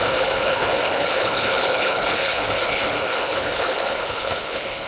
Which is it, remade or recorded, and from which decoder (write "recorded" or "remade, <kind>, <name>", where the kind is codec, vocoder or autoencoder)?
remade, codec, HILCodec